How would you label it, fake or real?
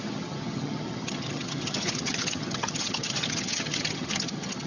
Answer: fake